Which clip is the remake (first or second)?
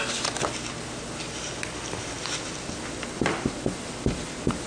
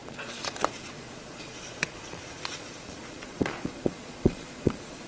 second